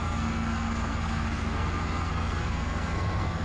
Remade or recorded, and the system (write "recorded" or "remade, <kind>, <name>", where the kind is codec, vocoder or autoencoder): remade, codec, SNAC